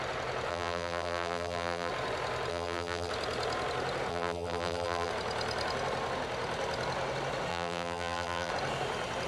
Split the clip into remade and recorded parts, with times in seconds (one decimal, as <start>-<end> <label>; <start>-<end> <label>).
0.0-0.5 recorded; 0.5-1.9 remade; 1.9-2.5 recorded; 2.5-3.1 remade; 3.1-4.1 recorded; 4.1-5.1 remade; 5.1-7.5 recorded; 7.5-8.5 remade; 8.5-9.3 recorded